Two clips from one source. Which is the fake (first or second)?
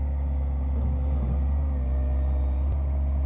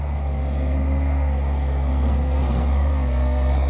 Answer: second